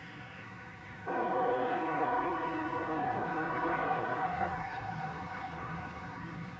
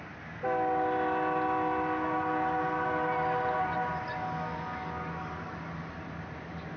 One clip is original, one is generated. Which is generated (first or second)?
first